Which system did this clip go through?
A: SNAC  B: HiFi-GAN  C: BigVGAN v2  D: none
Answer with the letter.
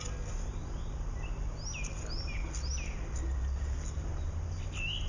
D